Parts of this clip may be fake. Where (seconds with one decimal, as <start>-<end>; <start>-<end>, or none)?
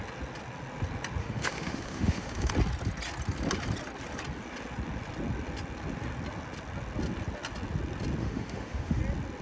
1.2-2.5; 8.2-9.0